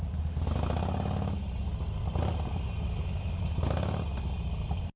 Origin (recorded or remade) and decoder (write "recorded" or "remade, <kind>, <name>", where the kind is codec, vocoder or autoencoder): recorded